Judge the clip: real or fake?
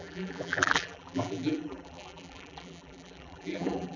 fake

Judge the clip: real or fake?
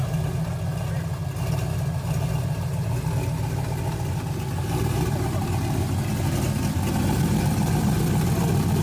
real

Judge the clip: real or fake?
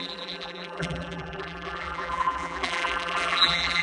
fake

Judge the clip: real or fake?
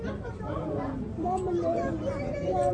fake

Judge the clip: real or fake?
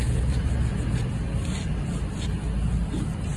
real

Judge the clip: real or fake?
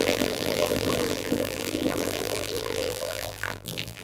fake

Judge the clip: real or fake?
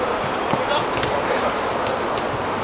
real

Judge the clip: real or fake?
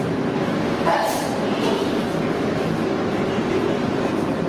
real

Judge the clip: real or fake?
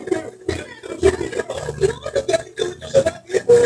real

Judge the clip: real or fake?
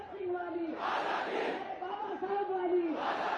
fake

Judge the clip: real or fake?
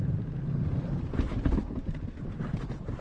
real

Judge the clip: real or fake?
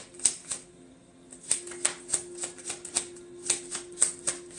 real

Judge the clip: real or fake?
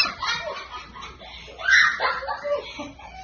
real